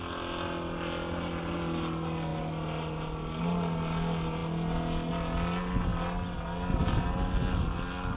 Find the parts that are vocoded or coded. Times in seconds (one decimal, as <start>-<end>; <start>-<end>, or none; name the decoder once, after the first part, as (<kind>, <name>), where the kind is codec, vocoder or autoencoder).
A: none